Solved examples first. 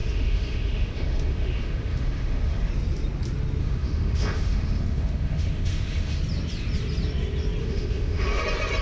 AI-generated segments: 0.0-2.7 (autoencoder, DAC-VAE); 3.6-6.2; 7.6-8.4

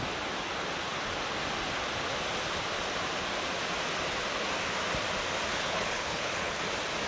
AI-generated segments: 5.5-6.6 (codec, HILCodec)

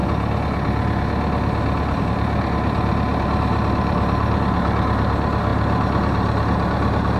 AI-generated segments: 2.0-7.2 (vocoder, BigVGAN v2)

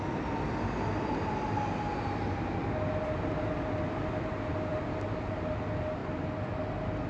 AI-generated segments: none

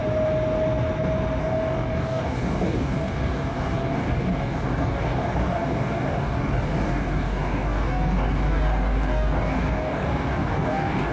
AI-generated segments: 1.4-11.1 (codec, DAC)

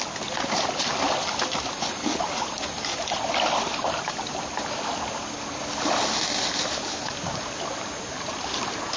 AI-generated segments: none

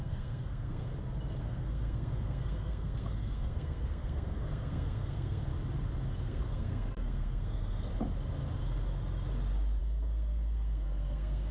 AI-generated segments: 0.0-0.9 (codec, SNAC); 1.4-5.5; 6.2-7.9; 9.8-11.5

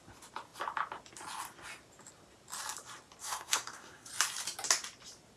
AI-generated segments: 3.2-4.1 (codec, SNAC)